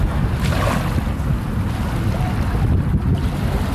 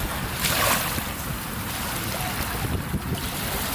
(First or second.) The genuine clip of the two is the first